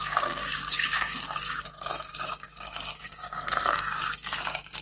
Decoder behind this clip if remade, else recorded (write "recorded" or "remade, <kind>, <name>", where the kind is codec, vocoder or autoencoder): remade, codec, DAC